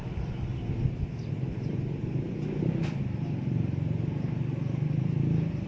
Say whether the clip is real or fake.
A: real